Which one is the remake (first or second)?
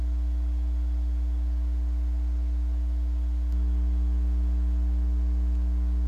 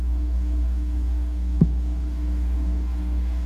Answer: second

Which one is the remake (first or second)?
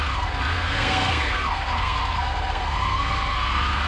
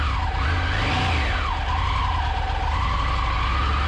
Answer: first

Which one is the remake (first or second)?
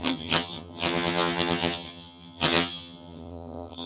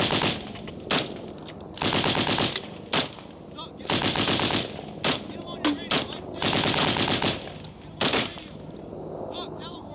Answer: first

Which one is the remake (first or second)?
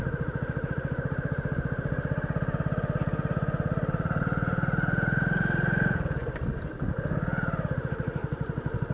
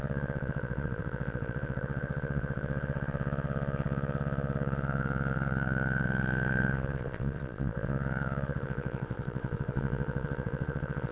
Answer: second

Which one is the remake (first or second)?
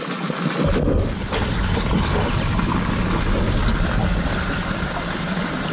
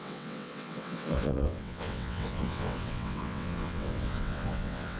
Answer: second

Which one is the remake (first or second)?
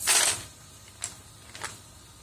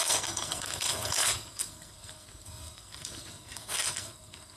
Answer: second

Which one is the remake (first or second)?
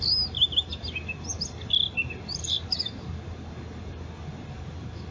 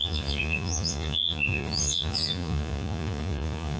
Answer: second